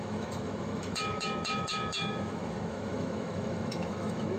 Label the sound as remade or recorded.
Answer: remade